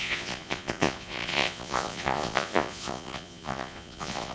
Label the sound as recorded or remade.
remade